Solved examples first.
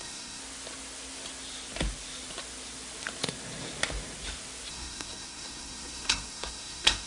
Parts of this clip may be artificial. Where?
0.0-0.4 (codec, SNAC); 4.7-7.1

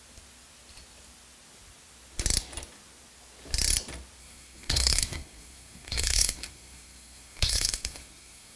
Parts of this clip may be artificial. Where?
4.2-8.6 (codec, SNAC)

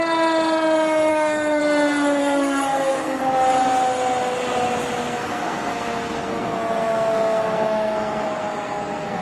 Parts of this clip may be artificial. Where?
1.1-1.6 (codec, SNAC); 2.2-3.2; 5.0-9.2

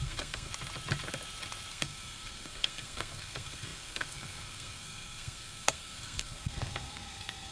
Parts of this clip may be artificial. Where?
0.0-0.5 (codec, SNAC); 1.7-7.5

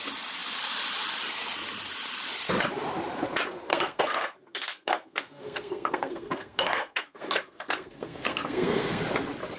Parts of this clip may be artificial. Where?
3.7-9.0 (codec, SNAC)

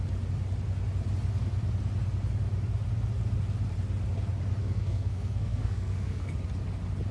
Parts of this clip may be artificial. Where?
4.6-6.3 (codec, SNAC)

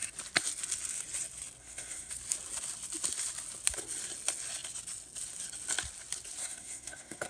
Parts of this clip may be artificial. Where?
1.6-2.1 (codec, SNAC); 6.4-7.3